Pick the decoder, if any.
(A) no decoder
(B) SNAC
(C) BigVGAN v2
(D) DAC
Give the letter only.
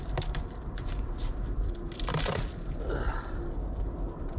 C